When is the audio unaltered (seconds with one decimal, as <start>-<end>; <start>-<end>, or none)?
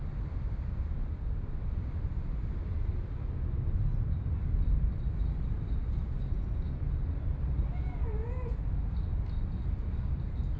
0.0-10.6